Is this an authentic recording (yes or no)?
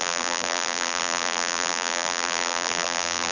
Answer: no